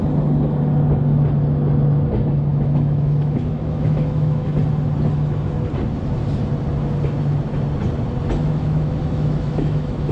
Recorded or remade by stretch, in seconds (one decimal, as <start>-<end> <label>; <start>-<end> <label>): 0.0-2.5 recorded; 2.5-4.5 remade; 4.5-8.4 recorded; 8.4-10.1 remade